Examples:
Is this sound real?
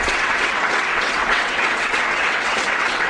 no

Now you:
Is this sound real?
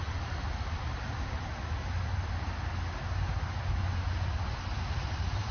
yes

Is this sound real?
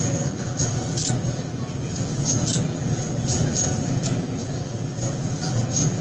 no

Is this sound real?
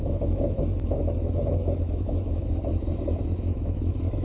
no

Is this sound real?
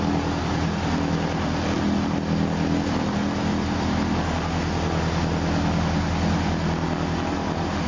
yes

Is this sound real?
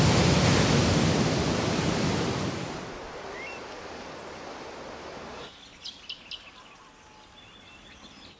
yes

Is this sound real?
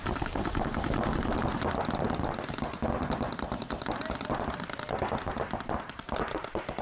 yes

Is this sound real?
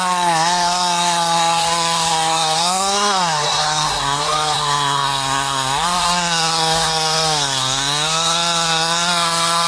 no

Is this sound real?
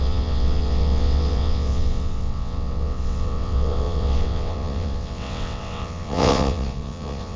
no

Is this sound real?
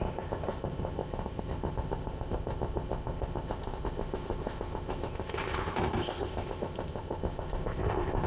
no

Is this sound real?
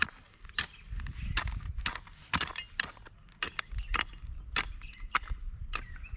yes